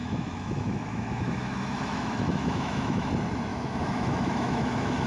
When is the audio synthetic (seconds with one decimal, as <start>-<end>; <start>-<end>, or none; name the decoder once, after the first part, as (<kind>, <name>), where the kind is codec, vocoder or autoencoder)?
0.0-3.1 (autoencoder, DAC-VAE); 3.5-5.1